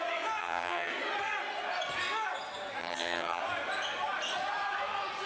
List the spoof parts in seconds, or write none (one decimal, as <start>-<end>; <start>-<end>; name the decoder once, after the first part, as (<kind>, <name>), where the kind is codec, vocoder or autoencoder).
0.4-0.9 (vocoder, HiFi-GAN); 2.8-3.4